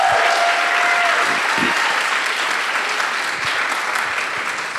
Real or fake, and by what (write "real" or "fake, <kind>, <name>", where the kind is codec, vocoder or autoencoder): real